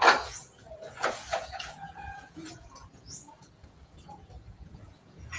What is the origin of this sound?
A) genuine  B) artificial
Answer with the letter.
B